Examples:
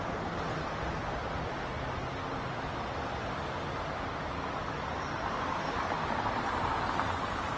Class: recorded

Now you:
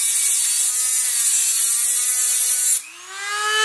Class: recorded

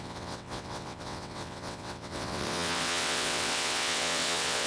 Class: remade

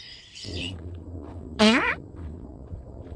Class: remade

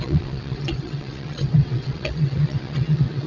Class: remade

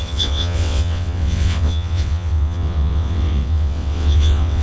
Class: remade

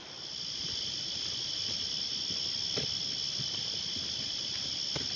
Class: recorded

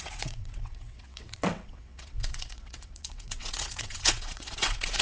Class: remade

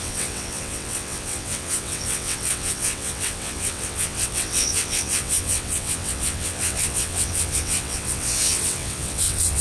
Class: remade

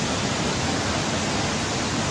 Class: recorded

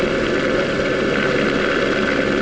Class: recorded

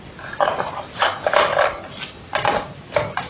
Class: recorded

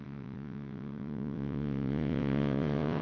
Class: remade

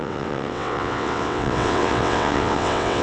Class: remade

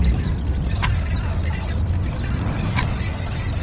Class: recorded